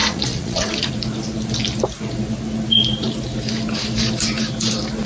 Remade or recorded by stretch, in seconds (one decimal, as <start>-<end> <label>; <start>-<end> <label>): 0.0-0.9 remade; 0.9-5.1 recorded